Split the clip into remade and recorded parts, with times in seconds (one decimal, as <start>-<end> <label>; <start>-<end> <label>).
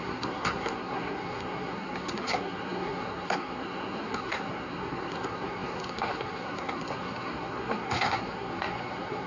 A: 0.0-9.3 remade